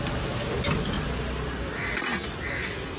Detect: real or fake real